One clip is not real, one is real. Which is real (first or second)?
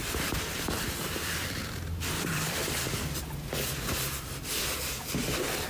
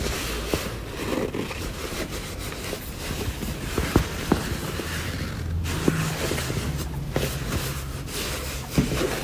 second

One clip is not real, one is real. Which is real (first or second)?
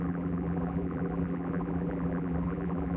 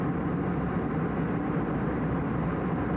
second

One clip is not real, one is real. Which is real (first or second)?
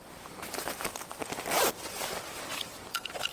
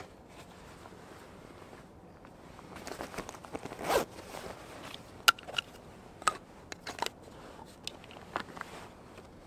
second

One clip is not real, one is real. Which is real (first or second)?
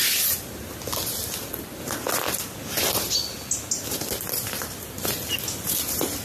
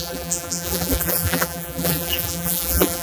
first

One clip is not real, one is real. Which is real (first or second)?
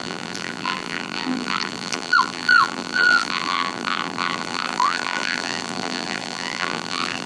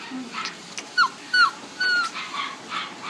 second